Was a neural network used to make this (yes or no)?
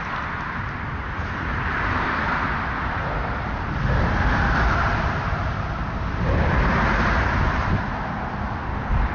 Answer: no